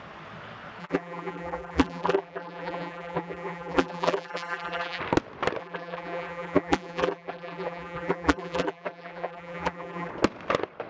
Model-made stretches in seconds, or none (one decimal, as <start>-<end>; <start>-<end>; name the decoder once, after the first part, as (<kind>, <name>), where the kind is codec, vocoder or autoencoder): 0.8-5.0 (vocoder, BigVGAN v2); 5.6-10.1